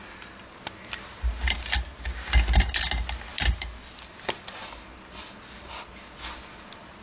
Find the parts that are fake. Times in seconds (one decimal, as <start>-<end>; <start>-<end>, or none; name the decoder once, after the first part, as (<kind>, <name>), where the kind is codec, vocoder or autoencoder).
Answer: 3.3-4.4 (vocoder, BigVGAN v2)